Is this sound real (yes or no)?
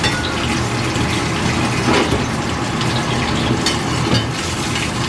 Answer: yes